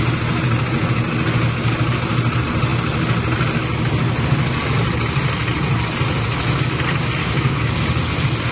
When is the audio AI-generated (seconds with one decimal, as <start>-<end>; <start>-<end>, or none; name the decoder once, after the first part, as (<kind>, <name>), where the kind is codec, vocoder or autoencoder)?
7.2-7.8 (codec, DAC)